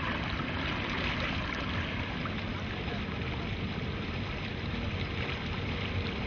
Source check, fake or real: real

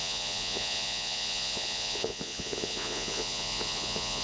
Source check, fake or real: fake